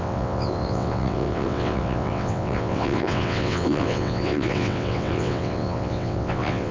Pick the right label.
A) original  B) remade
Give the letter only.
B